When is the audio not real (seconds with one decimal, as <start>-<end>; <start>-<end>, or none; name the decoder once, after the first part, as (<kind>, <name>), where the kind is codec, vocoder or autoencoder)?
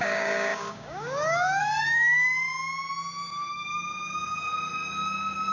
0.0-2.5 (codec, DAC); 3.5-4.5